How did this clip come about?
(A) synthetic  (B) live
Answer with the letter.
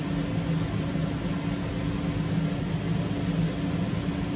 B